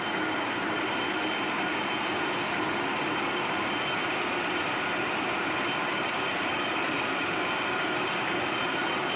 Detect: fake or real real